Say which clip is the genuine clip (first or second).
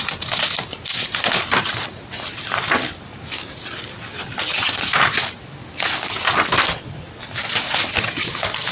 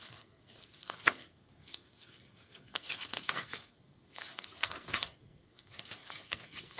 first